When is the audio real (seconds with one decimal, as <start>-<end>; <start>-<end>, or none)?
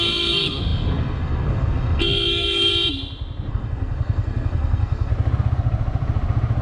2.7-3.5; 5.1-6.6